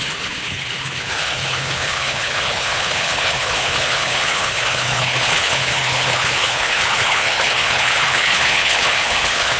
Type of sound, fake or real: fake